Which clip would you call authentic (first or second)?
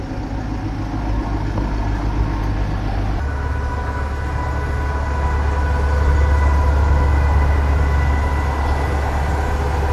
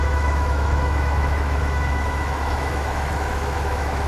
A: first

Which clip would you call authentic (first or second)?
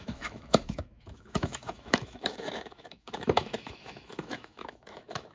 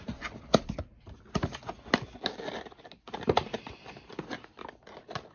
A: second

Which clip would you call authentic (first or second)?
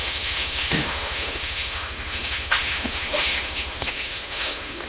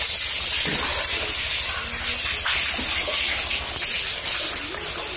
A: second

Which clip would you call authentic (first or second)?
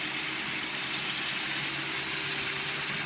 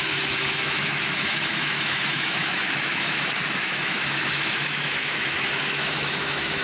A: first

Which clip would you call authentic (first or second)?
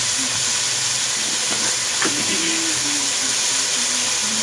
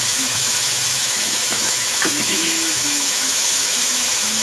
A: first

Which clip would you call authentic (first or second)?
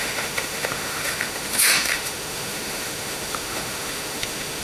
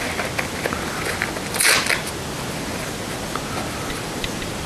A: second